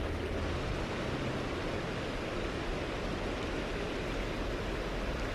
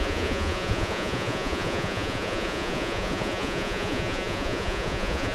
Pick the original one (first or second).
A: first